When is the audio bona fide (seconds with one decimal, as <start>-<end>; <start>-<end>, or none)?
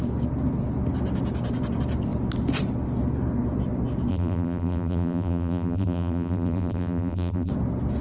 0.0-4.1; 7.5-8.0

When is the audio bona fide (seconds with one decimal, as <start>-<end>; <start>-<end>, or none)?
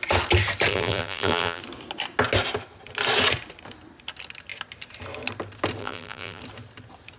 0.0-0.7; 1.6-5.8; 6.4-7.2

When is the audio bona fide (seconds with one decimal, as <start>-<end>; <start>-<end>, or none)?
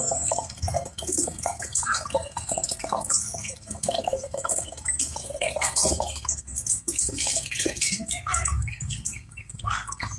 none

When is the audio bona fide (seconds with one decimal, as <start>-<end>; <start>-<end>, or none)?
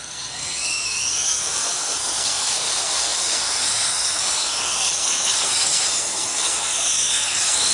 none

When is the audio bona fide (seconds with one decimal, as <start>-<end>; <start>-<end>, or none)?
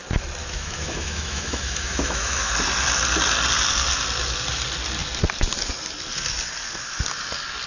0.0-0.4; 2.5-7.7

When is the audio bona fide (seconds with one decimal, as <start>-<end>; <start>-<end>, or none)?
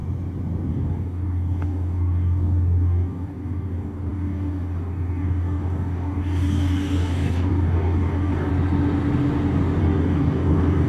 0.0-0.7; 8.5-9.8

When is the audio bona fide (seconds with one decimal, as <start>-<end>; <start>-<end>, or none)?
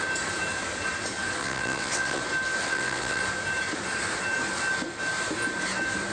0.0-1.4; 2.2-2.6; 3.2-6.1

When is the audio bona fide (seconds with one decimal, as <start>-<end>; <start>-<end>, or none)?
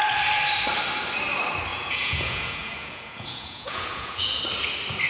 0.0-1.7; 4.4-5.1